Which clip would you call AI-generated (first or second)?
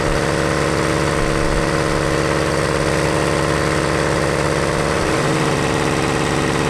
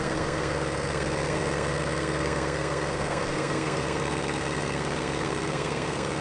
second